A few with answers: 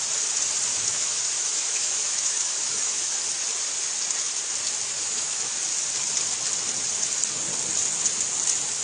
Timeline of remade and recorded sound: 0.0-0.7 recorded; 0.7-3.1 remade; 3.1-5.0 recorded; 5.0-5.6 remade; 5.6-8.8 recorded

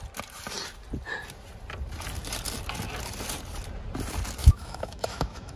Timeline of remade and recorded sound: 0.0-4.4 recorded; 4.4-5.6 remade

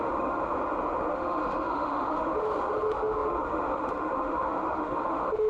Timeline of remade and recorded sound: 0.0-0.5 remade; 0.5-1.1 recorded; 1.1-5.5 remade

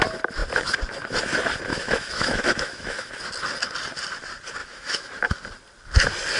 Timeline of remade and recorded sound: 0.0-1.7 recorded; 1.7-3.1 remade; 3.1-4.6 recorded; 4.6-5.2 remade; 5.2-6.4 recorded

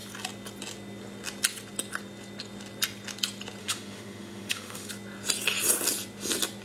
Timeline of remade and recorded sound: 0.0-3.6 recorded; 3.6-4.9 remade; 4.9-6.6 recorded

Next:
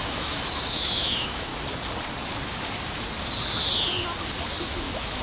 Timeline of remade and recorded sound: 0.0-1.5 remade; 1.5-4.6 recorded; 4.6-5.2 remade

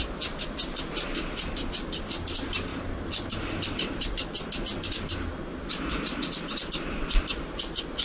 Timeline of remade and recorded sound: 0.0-8.0 recorded